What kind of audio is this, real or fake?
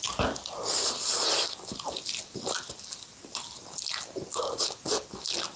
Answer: real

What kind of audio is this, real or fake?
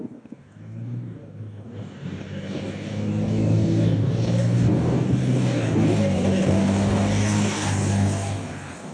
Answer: fake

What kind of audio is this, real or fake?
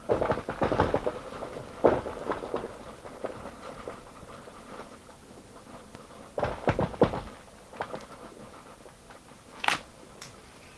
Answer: real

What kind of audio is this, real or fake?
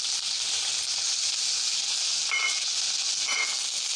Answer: real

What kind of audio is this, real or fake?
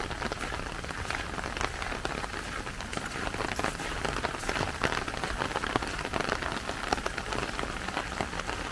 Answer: real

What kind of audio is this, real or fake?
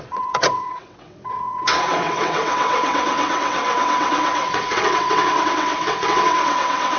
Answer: fake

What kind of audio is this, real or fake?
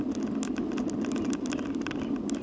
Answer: real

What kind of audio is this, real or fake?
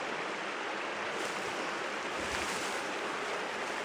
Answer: real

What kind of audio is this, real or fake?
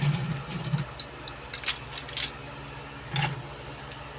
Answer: real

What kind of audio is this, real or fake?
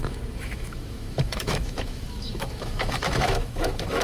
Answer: fake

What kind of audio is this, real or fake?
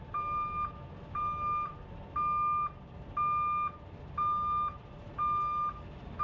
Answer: real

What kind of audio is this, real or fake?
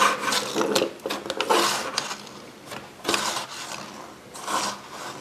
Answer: real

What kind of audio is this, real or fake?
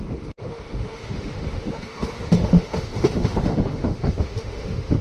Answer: fake